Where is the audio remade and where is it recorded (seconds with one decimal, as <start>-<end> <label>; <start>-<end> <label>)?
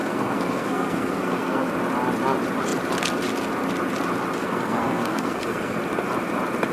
0.0-1.7 remade; 1.7-4.4 recorded; 4.4-5.8 remade; 5.8-6.7 recorded